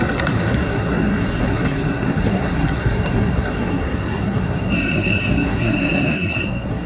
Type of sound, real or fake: fake